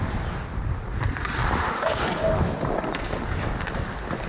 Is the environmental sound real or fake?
real